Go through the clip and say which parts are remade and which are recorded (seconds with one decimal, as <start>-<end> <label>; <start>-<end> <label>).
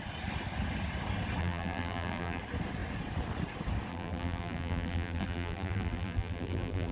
0.0-1.4 recorded; 1.4-2.4 remade; 2.4-3.9 recorded; 3.9-6.9 remade